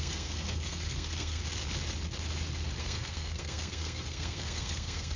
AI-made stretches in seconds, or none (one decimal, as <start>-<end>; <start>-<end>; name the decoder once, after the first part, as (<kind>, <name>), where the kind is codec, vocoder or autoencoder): 0.0-1.4 (codec, SNAC); 2.8-5.2